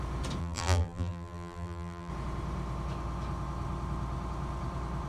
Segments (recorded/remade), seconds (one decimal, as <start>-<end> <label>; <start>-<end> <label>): 0.0-0.4 recorded; 0.4-2.1 remade; 2.1-5.1 recorded